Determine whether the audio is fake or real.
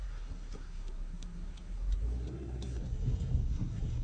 fake